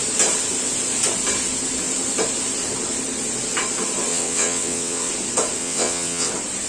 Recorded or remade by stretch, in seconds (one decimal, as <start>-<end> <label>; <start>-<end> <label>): 0.0-4.1 recorded; 4.1-5.1 remade; 5.1-5.6 recorded; 5.6-6.3 remade; 6.3-6.7 recorded